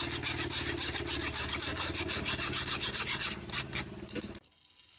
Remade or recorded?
recorded